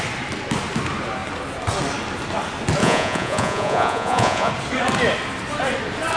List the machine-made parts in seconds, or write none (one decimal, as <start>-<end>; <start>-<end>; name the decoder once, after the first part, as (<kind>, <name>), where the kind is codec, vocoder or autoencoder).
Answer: 2.8-4.5 (vocoder, Vocos)